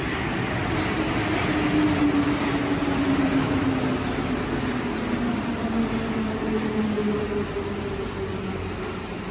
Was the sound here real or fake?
real